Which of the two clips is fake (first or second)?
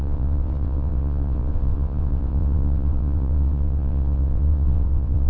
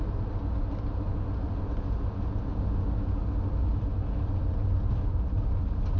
first